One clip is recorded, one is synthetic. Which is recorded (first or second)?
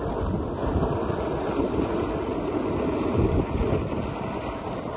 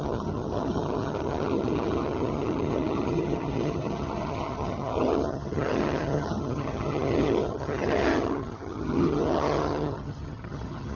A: first